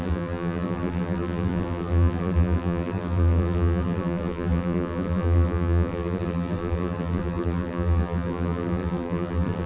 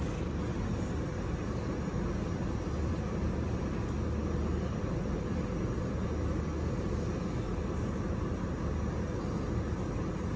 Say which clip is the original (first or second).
second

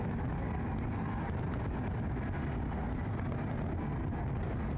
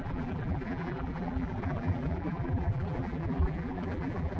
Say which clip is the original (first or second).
first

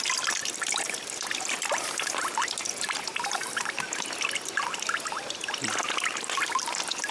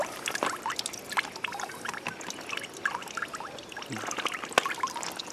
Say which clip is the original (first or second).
second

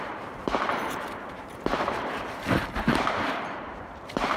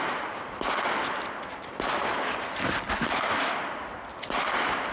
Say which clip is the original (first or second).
second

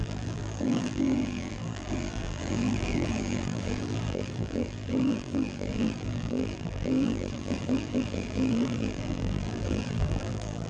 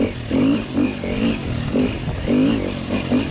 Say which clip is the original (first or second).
second